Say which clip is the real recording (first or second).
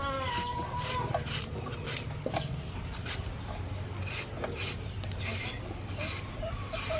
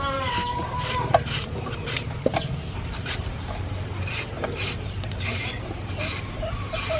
first